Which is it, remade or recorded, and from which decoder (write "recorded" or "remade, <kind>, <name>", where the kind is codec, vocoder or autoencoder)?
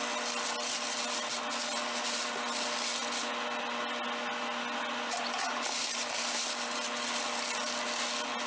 recorded